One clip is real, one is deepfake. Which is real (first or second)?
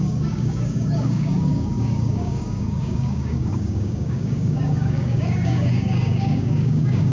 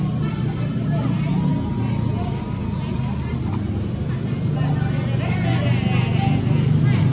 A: second